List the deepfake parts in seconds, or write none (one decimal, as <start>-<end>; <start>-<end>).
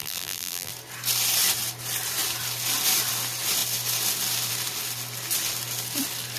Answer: 0.0-0.7